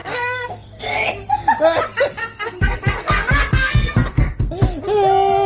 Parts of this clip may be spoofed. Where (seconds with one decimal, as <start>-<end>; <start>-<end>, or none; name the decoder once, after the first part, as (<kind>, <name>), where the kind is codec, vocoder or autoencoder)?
0.0-0.8 (codec, SNAC); 2.2-4.5